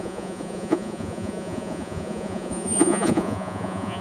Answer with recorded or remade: remade